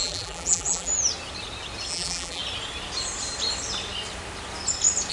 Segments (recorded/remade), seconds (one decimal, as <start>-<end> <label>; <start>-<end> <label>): 0.0-0.9 remade; 0.9-1.9 recorded; 1.9-2.4 remade; 2.4-5.1 recorded